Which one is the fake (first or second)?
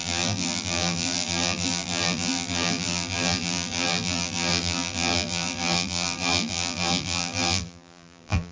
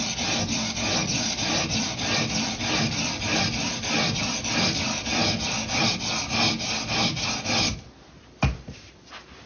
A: first